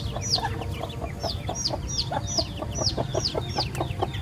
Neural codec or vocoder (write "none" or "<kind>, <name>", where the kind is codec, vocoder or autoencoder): none